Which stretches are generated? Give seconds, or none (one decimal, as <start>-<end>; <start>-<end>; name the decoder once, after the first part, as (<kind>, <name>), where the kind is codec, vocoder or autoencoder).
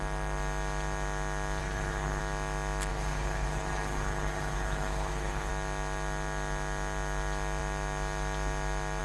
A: 1.6-2.2 (codec, HILCodec); 2.9-5.5